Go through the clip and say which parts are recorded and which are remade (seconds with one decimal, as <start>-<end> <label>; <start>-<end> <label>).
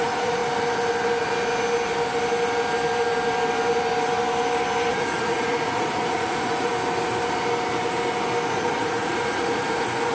0.0-0.4 remade; 0.4-4.9 recorded; 4.9-6.7 remade; 6.7-8.5 recorded; 8.5-10.1 remade